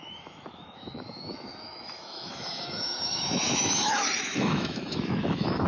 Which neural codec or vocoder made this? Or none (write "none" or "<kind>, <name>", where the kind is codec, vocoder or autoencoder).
autoencoder, DAC-VAE